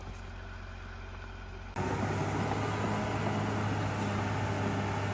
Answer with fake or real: real